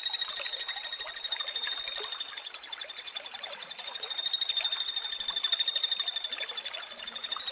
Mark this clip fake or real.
real